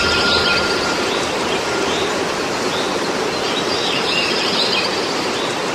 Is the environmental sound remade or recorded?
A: remade